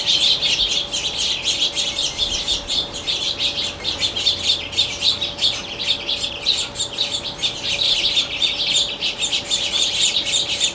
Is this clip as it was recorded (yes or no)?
yes